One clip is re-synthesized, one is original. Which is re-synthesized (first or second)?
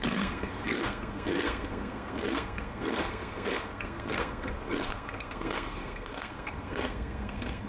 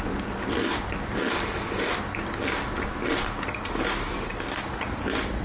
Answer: first